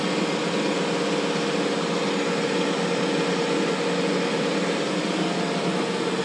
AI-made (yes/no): no